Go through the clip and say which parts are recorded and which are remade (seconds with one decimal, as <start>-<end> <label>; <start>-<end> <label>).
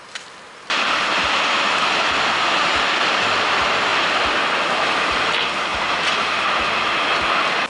0.0-2.7 recorded; 2.7-3.4 remade; 3.4-7.7 recorded